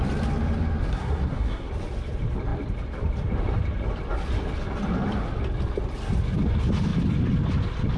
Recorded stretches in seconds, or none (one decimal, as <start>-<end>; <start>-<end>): 0.0-0.9; 1.7-8.0